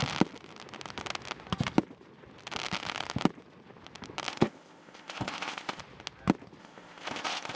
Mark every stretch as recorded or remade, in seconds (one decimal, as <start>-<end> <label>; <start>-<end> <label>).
0.0-4.3 recorded; 4.3-5.8 remade; 5.8-6.6 recorded; 6.6-7.6 remade